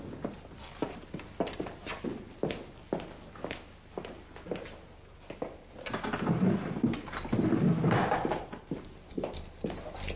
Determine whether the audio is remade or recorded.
recorded